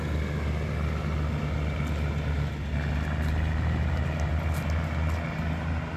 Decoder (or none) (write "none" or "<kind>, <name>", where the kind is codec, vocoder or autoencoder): none